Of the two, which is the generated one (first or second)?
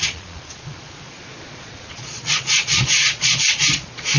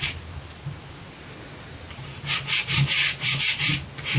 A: first